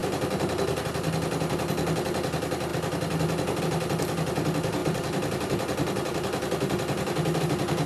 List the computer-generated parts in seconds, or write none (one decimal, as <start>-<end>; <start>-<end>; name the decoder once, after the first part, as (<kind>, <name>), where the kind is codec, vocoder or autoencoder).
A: none

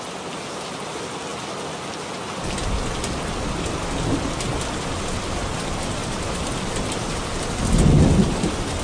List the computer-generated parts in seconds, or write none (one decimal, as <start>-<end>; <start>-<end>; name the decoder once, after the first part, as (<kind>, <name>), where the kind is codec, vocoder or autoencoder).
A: 6.0-7.1 (vocoder, BigVGAN v2)

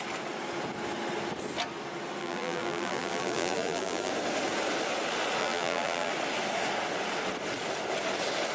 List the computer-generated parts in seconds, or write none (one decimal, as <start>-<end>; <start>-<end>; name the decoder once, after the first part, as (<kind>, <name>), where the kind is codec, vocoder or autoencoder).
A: 2.2-4.1 (vocoder, BigVGAN v2); 5.4-6.1

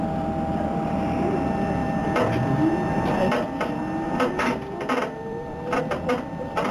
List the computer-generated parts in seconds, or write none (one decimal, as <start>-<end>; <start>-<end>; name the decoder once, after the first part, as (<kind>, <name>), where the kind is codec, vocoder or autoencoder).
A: 1.8-5.8 (vocoder, BigVGAN v2)

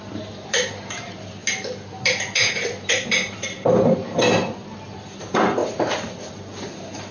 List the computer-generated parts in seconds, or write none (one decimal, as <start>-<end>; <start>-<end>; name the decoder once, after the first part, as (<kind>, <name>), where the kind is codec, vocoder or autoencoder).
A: 0.0-1.4 (vocoder, BigVGAN v2); 2.5-5.6; 6.1-7.1

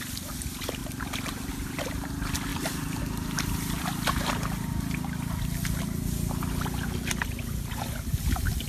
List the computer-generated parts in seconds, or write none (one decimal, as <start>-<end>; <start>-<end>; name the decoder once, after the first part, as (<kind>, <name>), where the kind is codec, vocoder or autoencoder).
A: 0.8-1.5 (vocoder, BigVGAN v2)